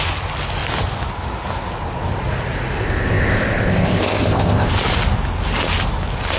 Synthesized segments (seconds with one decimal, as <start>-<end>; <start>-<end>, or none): 2.8-4.7